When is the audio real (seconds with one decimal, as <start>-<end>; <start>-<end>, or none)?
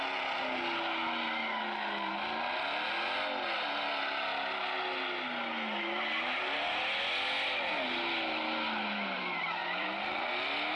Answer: 0.0-9.6; 10.3-10.8